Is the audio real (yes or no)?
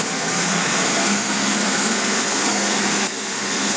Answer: no